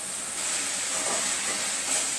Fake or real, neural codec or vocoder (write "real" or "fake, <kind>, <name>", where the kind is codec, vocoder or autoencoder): real